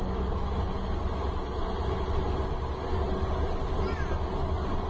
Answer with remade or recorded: recorded